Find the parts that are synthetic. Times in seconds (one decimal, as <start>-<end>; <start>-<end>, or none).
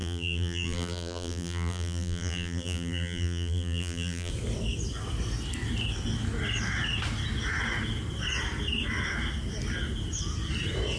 0.0-4.3